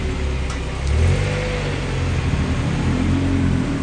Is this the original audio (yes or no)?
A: yes